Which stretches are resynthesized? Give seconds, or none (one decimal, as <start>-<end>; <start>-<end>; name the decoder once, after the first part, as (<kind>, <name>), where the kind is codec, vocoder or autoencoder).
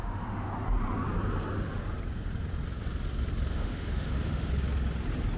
0.0-0.5 (autoencoder, DAC-VAE); 3.5-4.5